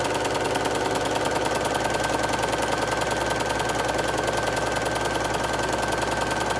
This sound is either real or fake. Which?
real